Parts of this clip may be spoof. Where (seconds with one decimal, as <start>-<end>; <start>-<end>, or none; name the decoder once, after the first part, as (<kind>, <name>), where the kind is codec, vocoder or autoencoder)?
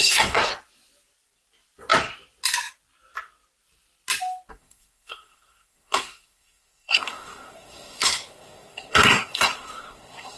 0.0-0.5 (codec, SNAC); 4.5-10.4